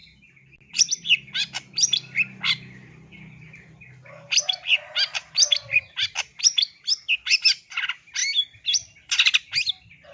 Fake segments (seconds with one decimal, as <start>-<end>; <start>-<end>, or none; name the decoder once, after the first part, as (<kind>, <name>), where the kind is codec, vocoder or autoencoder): none